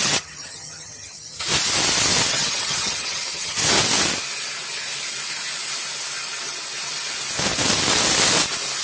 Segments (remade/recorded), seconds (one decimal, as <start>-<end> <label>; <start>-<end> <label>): 0.0-1.5 remade; 1.5-2.3 recorded; 2.3-3.6 remade; 3.6-8.8 recorded